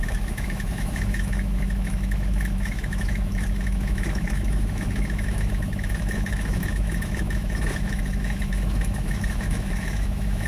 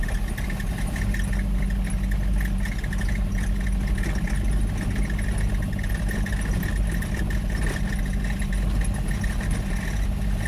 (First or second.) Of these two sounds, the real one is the second